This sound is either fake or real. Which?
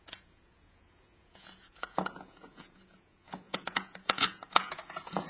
fake